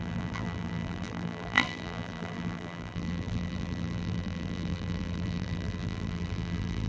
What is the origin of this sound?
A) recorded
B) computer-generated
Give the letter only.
B